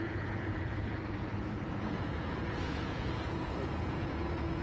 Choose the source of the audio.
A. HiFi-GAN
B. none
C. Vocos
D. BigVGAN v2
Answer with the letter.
C